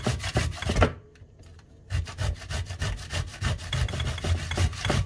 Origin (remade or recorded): recorded